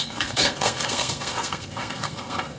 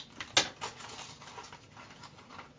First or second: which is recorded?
second